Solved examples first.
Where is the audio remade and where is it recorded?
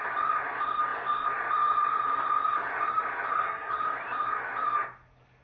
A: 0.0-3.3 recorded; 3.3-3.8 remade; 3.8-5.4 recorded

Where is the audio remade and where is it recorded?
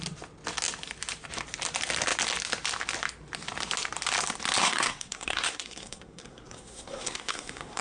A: 0.0-4.6 recorded; 4.6-7.8 remade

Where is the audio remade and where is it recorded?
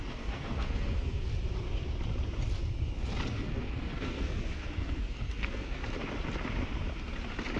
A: 0.0-1.3 remade; 1.3-3.3 recorded; 3.3-5.8 remade; 5.8-7.6 recorded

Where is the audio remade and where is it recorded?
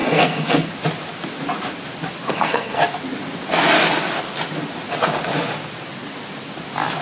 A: 0.0-0.7 remade; 0.7-2.3 recorded; 2.3-2.8 remade; 2.8-7.0 recorded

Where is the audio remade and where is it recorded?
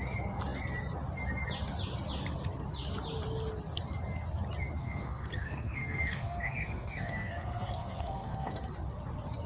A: 0.0-4.8 recorded; 4.8-8.6 remade; 8.6-9.5 recorded